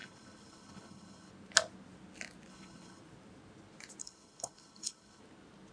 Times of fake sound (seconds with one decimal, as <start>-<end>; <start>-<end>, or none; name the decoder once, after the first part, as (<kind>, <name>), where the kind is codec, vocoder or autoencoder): 0.0-1.3 (codec, HILCodec); 2.5-3.0; 4.0-5.2